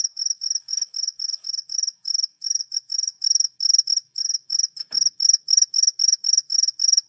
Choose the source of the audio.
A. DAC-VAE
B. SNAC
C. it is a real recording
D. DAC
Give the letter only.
A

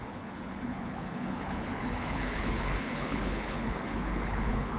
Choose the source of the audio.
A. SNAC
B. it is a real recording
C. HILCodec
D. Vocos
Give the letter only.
C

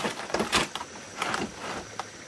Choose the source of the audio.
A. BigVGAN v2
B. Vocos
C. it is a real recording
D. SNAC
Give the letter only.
C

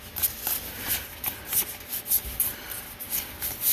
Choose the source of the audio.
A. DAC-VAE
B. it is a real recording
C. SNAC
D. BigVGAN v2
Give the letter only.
B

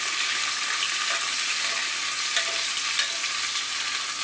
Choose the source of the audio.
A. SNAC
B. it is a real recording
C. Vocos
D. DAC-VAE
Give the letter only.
B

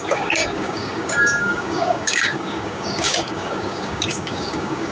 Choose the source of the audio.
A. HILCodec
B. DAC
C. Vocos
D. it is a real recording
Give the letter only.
B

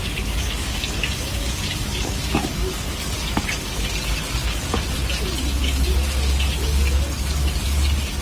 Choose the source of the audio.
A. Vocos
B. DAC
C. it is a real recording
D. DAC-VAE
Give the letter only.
B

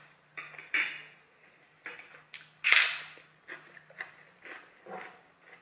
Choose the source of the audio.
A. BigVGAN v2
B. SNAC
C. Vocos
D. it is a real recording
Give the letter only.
A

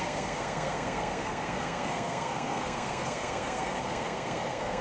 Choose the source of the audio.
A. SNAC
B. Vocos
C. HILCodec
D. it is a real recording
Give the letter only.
A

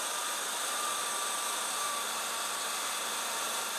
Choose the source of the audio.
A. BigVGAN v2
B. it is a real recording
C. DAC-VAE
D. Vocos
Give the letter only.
A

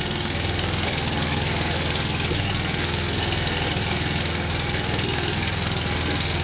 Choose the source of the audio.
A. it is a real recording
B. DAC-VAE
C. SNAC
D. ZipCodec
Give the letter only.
C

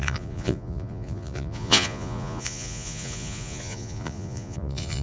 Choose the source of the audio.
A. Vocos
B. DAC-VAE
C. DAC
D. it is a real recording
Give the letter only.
A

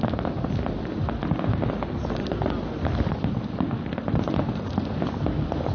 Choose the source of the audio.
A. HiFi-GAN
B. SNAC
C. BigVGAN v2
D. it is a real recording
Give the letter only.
D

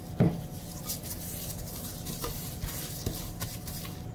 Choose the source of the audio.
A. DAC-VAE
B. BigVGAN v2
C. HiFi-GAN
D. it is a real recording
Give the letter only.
D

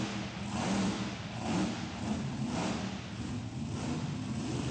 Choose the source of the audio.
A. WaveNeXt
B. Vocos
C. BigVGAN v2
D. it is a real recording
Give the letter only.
D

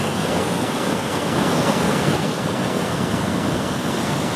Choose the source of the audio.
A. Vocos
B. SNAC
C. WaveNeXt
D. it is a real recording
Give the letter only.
B